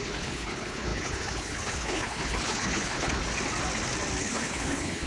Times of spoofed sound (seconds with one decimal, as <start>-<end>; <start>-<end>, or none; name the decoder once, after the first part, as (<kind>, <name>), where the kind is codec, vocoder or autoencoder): 0.0-3.2 (codec, HILCodec); 4.2-5.1

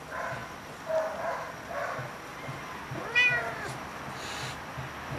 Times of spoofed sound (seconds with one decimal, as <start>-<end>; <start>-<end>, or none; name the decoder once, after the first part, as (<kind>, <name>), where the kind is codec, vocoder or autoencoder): 2.3-4.1 (vocoder, BigVGAN v2)

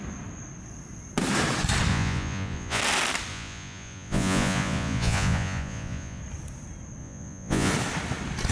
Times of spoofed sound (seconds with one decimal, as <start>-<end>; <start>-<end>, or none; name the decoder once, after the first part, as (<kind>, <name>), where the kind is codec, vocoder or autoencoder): 1.9-2.8 (vocoder, Vocos); 3.3-6.2; 7.0-7.7

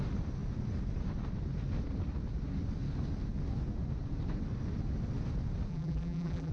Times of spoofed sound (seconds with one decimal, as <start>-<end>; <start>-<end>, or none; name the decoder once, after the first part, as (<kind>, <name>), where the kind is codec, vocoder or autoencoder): 5.7-6.5 (vocoder, BigVGAN v2)

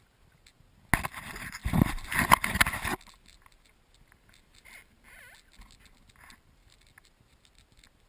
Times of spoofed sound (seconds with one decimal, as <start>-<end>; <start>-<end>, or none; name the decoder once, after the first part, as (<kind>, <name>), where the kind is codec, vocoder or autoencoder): none